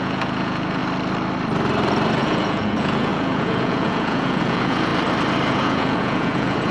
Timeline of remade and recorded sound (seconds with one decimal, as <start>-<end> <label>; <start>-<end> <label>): 0.0-0.8 remade; 0.8-2.2 recorded; 2.2-4.9 remade; 4.9-5.5 recorded; 5.5-6.7 remade